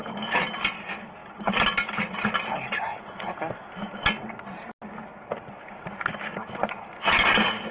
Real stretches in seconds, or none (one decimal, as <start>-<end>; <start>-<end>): 0.0-7.7

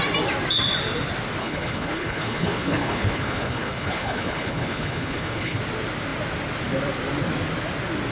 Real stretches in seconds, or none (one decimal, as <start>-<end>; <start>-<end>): 0.0-1.4; 5.6-8.1